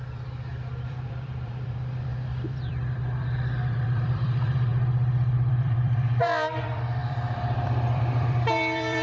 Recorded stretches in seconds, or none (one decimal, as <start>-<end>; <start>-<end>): 4.7-5.5